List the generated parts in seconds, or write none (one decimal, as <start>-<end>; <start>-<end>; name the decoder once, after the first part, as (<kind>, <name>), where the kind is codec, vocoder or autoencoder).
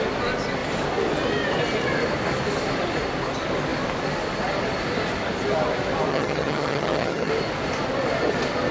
6.1-7.3 (vocoder, HiFi-GAN)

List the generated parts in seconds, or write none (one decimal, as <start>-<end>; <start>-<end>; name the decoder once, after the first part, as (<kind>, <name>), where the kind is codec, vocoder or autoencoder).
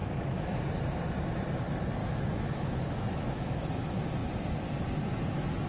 0.0-0.6 (autoencoder, DAC-VAE); 2.0-3.7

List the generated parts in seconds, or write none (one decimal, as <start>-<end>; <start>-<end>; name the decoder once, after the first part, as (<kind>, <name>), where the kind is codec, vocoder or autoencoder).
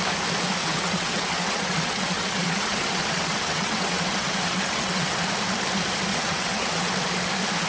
0.6-5.1 (vocoder, WaveNeXt); 6.1-6.9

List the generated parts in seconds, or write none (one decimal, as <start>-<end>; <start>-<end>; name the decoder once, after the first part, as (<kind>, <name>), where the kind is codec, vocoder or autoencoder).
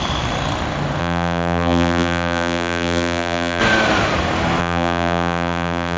1.0-3.6 (vocoder, BigVGAN v2); 4.6-6.0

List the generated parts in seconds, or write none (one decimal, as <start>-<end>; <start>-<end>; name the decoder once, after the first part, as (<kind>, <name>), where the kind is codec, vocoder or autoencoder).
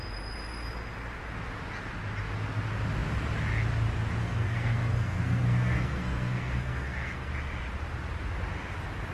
4.2-7.3 (codec, SNAC)